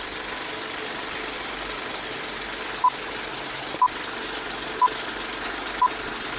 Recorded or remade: recorded